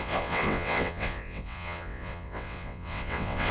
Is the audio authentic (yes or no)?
no